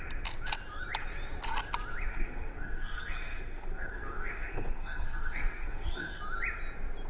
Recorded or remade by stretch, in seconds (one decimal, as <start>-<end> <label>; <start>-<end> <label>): 0.0-2.1 recorded; 2.1-6.2 remade; 6.2-7.1 recorded